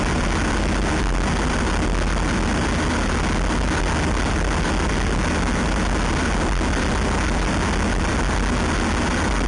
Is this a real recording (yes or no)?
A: yes